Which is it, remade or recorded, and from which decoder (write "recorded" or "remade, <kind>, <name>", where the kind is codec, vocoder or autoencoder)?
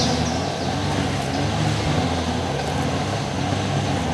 recorded